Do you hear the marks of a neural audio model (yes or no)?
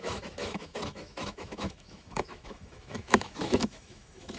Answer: yes